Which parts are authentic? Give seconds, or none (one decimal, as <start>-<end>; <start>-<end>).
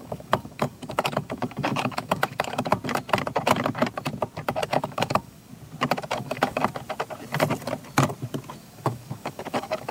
2.7-4.6; 5.5-6.1; 6.6-8.6